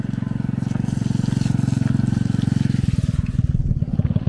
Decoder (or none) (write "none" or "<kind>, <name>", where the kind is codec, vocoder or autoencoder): none